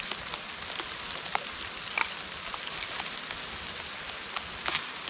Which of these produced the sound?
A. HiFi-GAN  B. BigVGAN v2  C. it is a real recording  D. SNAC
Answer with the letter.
C